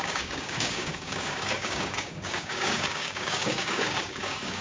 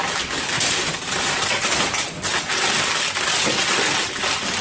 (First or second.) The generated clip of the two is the first